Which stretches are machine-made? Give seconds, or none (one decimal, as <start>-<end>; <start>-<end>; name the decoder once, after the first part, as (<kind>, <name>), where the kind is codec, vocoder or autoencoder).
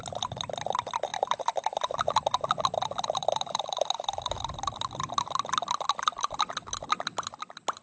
1.1-2.6 (vocoder, BigVGAN v2); 3.2-3.8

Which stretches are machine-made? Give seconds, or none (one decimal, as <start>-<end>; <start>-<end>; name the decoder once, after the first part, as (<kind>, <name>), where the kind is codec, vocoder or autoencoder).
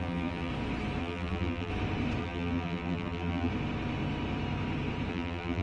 0.0-0.5 (vocoder, BigVGAN v2); 1.0-1.7; 2.2-3.5; 5.1-5.6